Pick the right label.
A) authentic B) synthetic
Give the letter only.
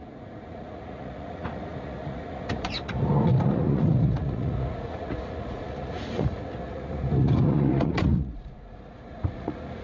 B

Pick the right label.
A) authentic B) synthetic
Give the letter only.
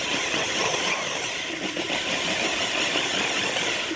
A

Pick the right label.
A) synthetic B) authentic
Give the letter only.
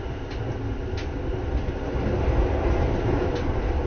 B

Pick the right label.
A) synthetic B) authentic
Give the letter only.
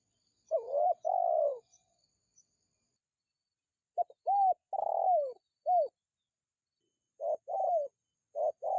B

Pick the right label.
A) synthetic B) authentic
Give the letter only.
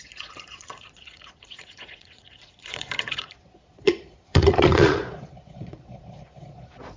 A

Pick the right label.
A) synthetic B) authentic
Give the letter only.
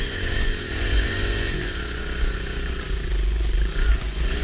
A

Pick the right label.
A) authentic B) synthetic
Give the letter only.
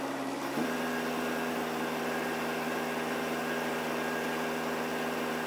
A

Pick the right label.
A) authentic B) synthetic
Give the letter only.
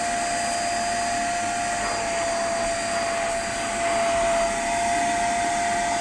A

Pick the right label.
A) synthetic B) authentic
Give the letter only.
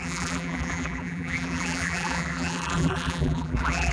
A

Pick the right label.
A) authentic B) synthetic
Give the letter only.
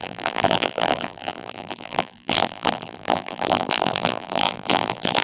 B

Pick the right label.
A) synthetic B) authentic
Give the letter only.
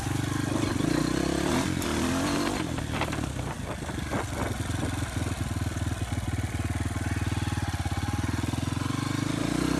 B